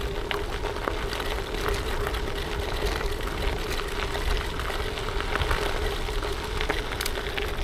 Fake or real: real